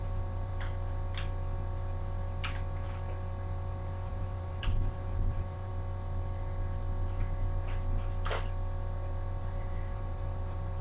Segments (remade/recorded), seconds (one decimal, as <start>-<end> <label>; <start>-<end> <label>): 0.0-0.5 remade; 0.5-4.1 recorded; 4.1-5.7 remade; 5.7-9.4 recorded; 9.4-10.8 remade